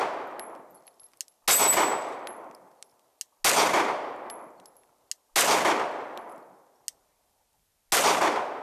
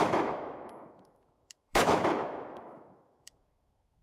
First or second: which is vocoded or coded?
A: second